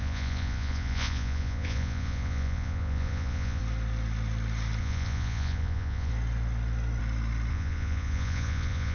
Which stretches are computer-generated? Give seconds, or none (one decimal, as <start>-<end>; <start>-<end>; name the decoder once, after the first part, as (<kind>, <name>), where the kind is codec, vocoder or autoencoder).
0.0-3.6 (vocoder, Vocos); 4.8-6.1; 7.5-8.9